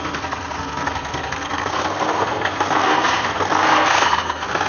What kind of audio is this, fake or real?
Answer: fake